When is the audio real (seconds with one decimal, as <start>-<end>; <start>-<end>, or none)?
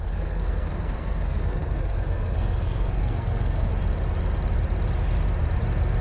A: 3.7-6.0